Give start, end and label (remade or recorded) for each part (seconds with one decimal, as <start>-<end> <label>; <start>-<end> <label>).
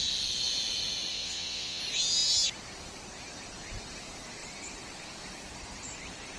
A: 0.0-1.1 recorded; 1.1-1.8 remade; 1.8-6.4 recorded